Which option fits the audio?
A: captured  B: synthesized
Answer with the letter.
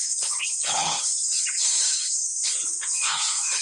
B